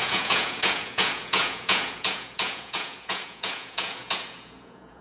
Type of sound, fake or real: fake